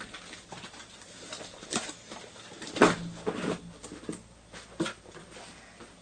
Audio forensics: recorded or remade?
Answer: recorded